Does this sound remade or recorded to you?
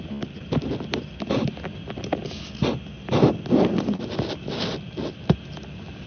recorded